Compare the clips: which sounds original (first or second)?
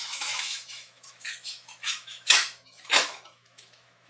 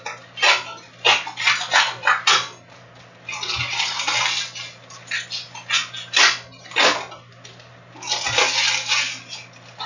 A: second